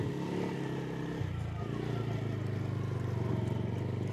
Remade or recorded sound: recorded